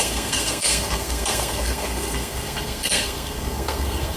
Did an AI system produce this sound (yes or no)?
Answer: yes